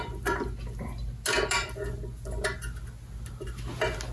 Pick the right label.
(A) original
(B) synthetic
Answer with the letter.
A